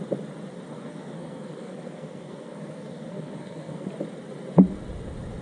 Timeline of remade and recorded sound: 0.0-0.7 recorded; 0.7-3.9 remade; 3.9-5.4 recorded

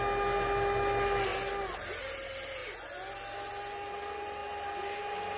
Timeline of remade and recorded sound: 0.0-5.4 recorded

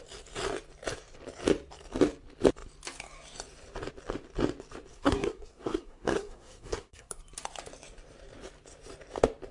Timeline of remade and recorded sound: 0.0-4.9 recorded; 4.9-7.1 remade; 7.1-9.5 recorded

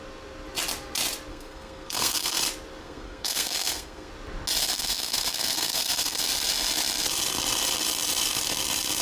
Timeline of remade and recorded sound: 0.0-1.3 recorded; 1.3-2.4 remade; 2.4-2.8 recorded; 2.8-4.1 remade; 4.1-4.6 recorded; 4.6-6.2 remade; 6.2-9.0 recorded

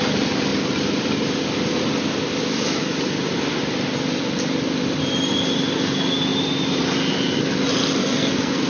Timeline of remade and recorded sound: 0.0-8.0 recorded; 8.0-8.7 remade